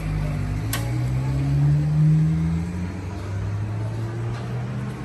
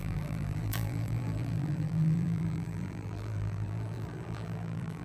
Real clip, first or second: first